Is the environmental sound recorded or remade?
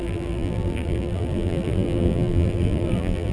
remade